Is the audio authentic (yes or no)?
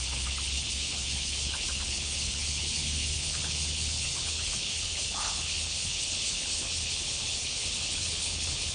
no